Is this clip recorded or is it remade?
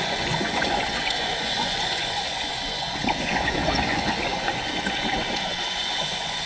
remade